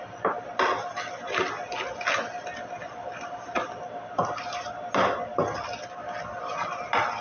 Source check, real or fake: real